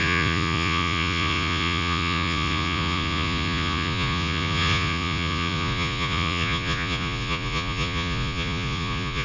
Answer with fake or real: fake